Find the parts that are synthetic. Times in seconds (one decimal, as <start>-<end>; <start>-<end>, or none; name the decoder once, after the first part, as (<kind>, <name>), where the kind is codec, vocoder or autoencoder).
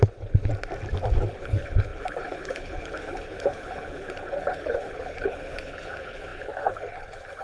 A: 0.0-0.5 (codec, HILCodec); 1.3-7.4